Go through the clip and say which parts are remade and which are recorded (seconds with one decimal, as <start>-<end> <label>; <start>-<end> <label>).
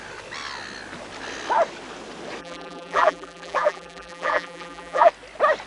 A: 0.0-2.4 recorded; 2.4-5.1 remade; 5.1-5.7 recorded